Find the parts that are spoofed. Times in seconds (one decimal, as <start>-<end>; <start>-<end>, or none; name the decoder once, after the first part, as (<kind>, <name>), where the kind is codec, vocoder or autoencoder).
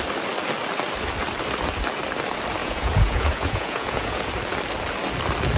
2.6-4.3 (vocoder, Vocos)